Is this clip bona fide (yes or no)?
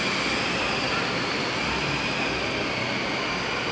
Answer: yes